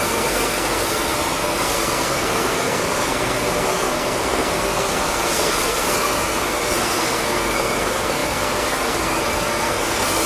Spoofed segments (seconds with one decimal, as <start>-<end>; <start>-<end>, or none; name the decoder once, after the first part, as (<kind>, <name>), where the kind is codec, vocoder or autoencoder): 0.0-10.3 (codec, SNAC)